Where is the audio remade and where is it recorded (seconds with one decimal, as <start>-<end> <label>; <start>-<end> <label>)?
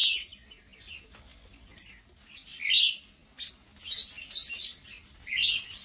0.0-5.8 recorded